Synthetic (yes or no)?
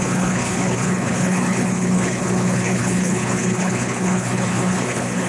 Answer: yes